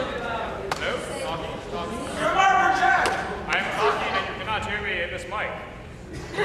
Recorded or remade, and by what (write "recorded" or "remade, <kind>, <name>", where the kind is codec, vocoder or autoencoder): recorded